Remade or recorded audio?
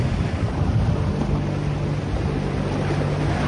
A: recorded